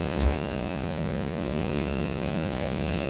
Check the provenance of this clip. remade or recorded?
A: remade